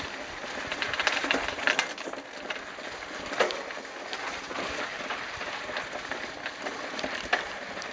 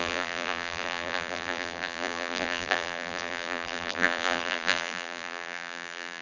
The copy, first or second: second